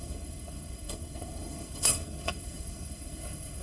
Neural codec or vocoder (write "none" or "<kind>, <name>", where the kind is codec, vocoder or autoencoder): codec, SNAC